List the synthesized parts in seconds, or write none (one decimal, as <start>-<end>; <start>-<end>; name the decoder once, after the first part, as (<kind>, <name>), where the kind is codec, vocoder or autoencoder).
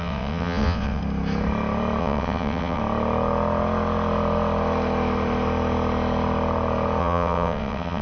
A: 0.0-1.0 (vocoder, WaveNeXt); 2.0-2.8; 7.0-8.0